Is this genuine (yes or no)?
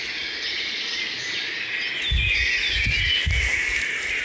yes